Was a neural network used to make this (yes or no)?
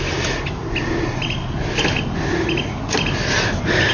no